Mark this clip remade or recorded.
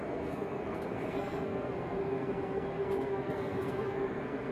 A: remade